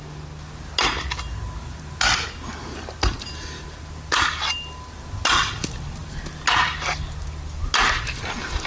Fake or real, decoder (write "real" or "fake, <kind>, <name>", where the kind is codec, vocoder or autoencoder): real